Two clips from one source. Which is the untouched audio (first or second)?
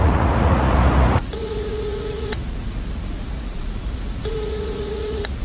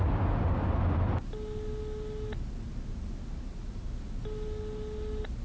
second